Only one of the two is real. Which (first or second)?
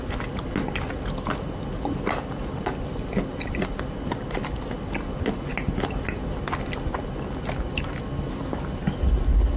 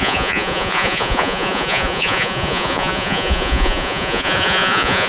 first